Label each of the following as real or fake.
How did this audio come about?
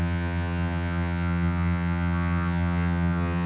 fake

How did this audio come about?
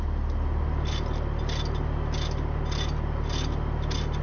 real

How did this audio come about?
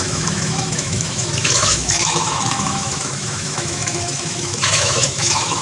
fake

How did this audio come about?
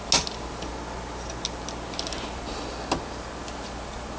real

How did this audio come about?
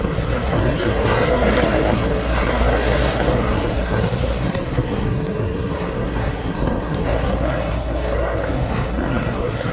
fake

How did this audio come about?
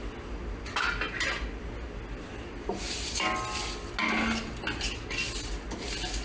real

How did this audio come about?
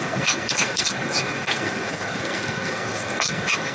fake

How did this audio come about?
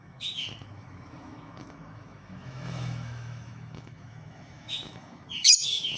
fake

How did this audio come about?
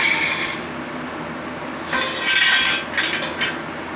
real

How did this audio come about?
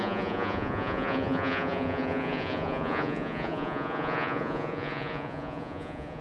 fake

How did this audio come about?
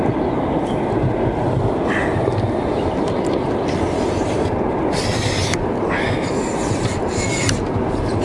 real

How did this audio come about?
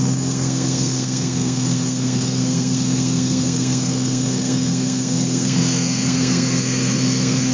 fake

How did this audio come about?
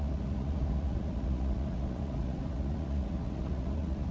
fake